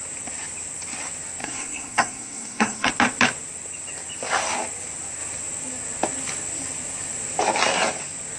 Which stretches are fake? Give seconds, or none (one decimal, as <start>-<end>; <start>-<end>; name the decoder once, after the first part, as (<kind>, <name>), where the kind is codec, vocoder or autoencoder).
1.4-2.9 (codec, SNAC)